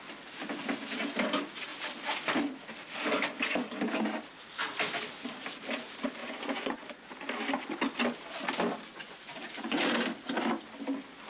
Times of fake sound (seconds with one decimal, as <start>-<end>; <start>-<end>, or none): 6.2-7.0; 8.9-9.9